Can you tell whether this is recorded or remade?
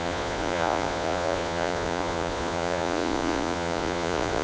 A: remade